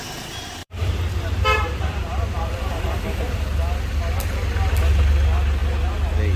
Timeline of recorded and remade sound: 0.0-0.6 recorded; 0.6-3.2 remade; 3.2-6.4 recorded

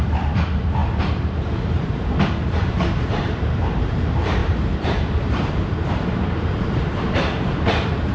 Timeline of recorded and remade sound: 0.0-0.8 remade; 0.8-1.7 recorded; 1.7-8.1 remade

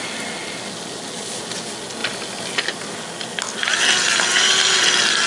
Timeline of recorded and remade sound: 0.0-5.3 recorded

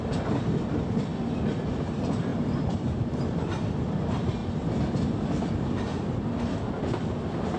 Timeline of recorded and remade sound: 0.0-2.3 recorded; 2.3-3.7 remade; 3.7-7.6 recorded

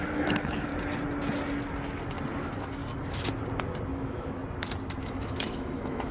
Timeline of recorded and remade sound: 0.0-0.7 remade; 0.7-2.4 recorded; 2.4-2.8 remade; 2.8-3.9 recorded; 3.9-4.4 remade; 4.4-5.0 recorded; 5.0-6.1 remade

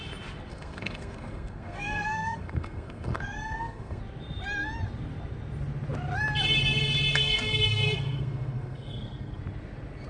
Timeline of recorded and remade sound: 0.0-0.5 recorded; 0.5-4.0 remade; 4.0-7.2 recorded; 7.2-9.4 remade; 9.4-10.1 recorded